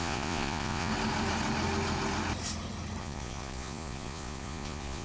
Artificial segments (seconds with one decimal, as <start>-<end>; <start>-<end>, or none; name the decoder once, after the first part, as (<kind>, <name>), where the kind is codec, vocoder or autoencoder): 0.0-0.9 (vocoder, Vocos); 3.0-5.0